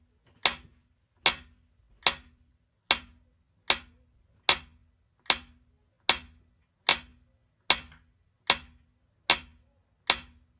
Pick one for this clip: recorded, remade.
recorded